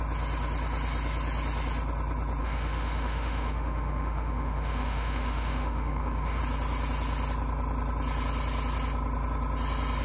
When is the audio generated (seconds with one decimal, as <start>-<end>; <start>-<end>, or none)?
2.4-6.4